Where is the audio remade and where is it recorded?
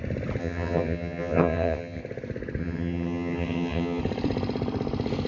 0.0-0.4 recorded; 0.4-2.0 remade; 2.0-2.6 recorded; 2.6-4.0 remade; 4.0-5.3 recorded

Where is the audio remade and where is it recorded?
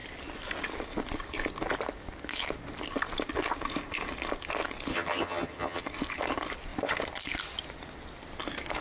0.0-4.9 recorded; 4.9-5.8 remade; 5.8-8.8 recorded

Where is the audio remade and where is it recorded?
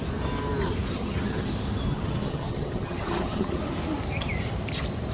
0.0-0.9 recorded; 0.9-1.5 remade; 1.5-1.9 recorded; 1.9-3.6 remade; 3.6-5.1 recorded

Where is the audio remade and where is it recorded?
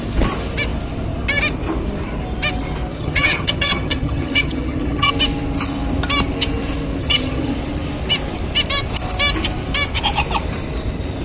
0.0-2.9 recorded; 2.9-5.1 remade; 5.1-7.0 recorded; 7.0-7.5 remade; 7.5-11.2 recorded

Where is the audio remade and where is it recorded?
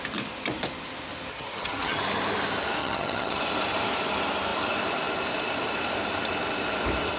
0.0-1.3 recorded; 1.3-2.0 remade; 2.0-2.8 recorded; 2.8-3.4 remade; 3.4-7.2 recorded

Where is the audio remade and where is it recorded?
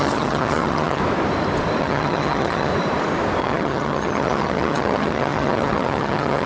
0.0-1.0 remade; 1.0-1.8 recorded; 1.8-2.7 remade; 2.7-3.4 recorded; 3.4-6.5 remade